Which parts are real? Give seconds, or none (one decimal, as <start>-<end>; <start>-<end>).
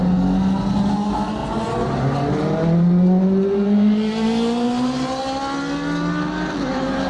0.0-1.4; 2.3-7.1